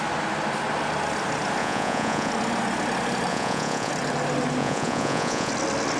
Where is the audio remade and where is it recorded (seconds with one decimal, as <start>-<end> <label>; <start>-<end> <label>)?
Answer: 0.0-1.6 recorded; 1.6-2.3 remade; 2.3-3.3 recorded; 3.3-3.9 remade; 3.9-4.6 recorded; 4.6-5.5 remade; 5.5-6.0 recorded